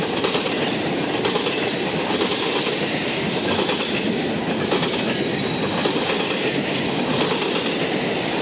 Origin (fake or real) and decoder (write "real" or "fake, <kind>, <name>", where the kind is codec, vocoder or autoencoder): real